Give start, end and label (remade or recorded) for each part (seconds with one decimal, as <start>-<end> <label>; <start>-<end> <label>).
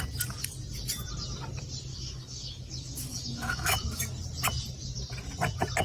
0.0-1.9 recorded; 1.9-4.0 remade; 4.0-5.8 recorded